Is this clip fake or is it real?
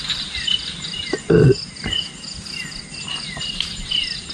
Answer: real